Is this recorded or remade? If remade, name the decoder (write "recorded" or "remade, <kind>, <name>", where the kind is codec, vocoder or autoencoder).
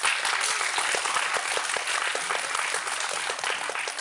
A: recorded